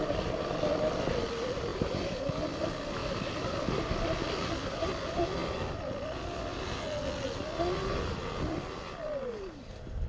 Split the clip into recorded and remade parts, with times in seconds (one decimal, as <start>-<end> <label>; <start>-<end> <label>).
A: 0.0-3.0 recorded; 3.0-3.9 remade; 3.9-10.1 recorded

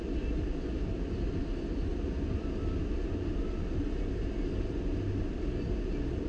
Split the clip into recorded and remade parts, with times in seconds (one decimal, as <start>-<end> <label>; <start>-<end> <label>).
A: 0.0-6.3 recorded

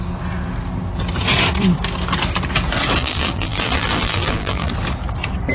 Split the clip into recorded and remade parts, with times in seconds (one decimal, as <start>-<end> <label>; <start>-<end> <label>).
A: 0.0-3.0 recorded; 3.0-4.7 remade; 4.7-5.5 recorded

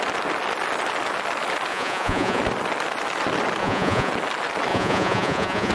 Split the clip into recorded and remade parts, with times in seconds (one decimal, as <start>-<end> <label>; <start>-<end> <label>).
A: 0.0-1.7 recorded; 1.7-2.4 remade; 2.4-3.6 recorded; 3.6-4.1 remade; 4.1-4.7 recorded; 4.7-5.7 remade

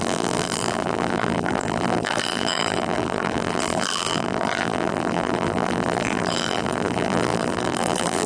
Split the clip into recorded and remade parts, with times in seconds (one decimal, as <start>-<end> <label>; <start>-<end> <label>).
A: 0.0-8.3 remade